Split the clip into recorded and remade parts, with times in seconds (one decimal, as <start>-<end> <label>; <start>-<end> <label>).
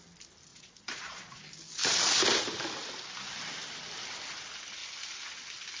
0.0-0.5 recorded; 0.5-1.4 remade; 1.4-5.8 recorded